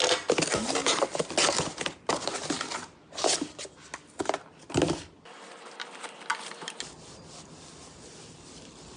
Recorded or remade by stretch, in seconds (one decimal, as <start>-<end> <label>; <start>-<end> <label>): 0.0-9.0 recorded